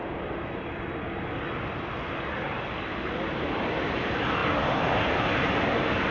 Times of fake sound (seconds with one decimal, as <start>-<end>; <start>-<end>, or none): none